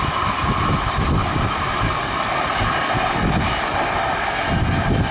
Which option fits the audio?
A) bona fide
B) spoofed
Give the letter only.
A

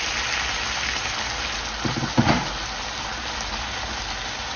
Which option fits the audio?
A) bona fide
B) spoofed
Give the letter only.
A